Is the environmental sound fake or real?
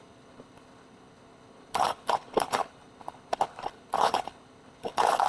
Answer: fake